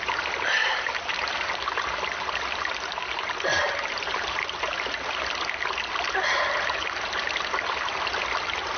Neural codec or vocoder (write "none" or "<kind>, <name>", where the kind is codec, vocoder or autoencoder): none